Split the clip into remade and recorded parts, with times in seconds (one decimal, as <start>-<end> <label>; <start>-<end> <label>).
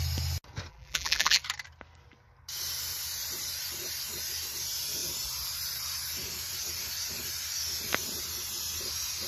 0.0-0.7 recorded; 0.7-1.4 remade; 1.4-9.3 recorded